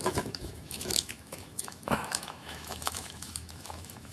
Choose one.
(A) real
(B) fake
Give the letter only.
B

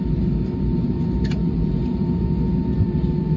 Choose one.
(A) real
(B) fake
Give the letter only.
B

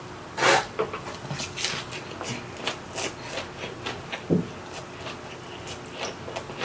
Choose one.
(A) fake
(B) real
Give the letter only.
B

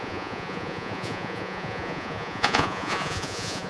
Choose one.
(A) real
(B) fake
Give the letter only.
B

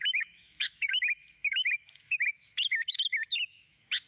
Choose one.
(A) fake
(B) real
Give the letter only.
A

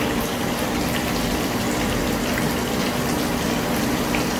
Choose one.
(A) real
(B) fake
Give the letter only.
B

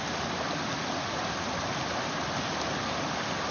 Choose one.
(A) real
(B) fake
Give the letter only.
A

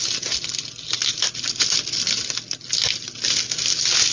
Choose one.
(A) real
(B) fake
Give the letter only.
A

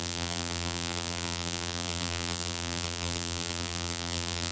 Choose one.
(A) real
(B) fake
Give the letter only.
B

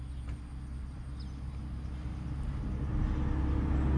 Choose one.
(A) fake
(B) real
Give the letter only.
B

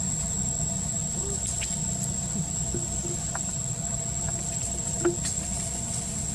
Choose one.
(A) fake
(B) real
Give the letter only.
B